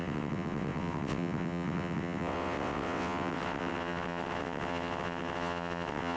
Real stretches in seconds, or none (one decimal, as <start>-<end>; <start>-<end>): none